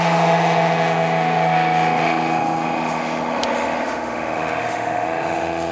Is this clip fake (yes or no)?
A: yes